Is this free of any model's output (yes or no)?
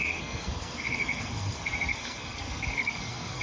no